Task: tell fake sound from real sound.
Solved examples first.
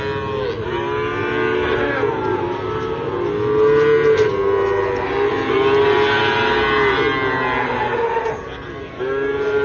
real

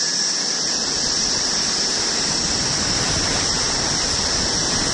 real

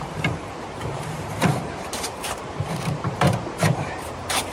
fake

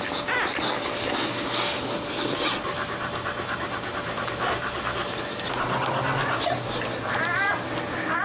real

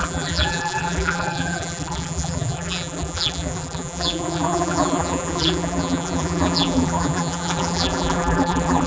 fake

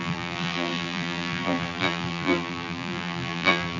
fake